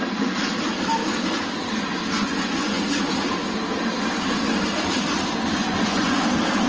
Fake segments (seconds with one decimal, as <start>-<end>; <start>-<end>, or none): 2.2-2.8; 5.6-6.2